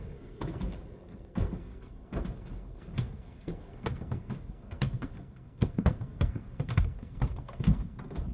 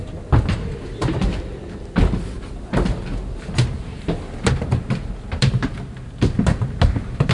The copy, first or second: first